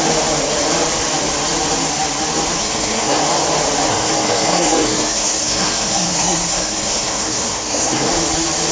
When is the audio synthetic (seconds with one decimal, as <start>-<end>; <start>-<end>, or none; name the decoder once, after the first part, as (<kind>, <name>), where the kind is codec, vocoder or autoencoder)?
2.6-3.2 (codec, SNAC); 3.9-8.1